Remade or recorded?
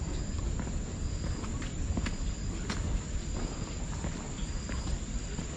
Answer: recorded